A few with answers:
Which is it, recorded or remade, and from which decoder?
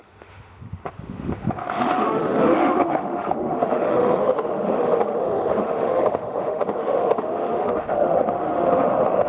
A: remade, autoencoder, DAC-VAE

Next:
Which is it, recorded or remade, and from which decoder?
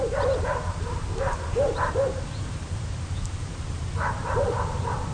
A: remade, vocoder, BigVGAN v2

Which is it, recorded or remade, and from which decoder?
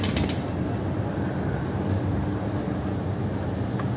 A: recorded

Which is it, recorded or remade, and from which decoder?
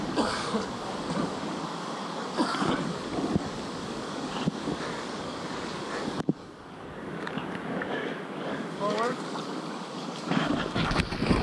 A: remade, codec, DAC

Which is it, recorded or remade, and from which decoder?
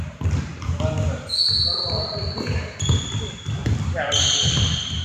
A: recorded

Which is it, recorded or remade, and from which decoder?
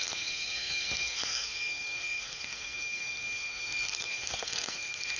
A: remade, codec, SNAC